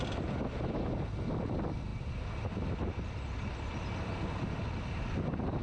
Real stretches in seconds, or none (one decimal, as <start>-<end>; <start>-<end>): 0.0-5.6